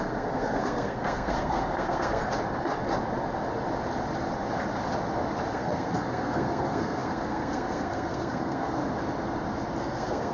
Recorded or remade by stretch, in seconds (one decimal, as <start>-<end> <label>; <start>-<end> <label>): 0.0-2.2 remade; 2.2-5.5 recorded; 5.5-8.8 remade; 8.8-9.8 recorded; 9.8-10.3 remade